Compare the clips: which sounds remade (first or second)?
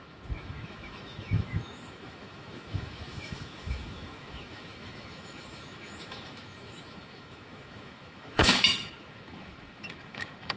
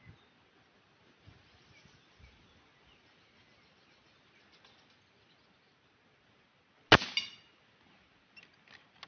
first